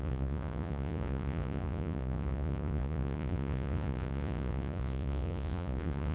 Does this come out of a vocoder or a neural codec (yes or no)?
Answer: yes